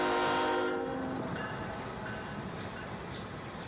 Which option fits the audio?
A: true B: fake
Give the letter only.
A